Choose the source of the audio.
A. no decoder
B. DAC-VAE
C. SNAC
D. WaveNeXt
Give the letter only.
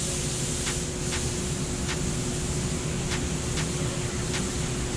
A